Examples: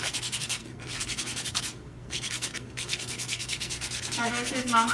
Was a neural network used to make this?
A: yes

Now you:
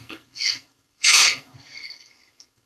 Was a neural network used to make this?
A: yes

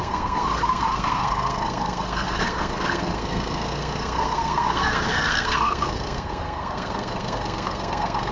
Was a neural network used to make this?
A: yes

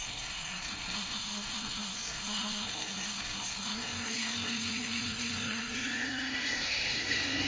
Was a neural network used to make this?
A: yes